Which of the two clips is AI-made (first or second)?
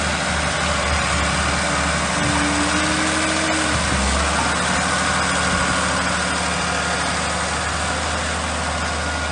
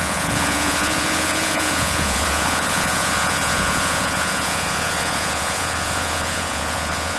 second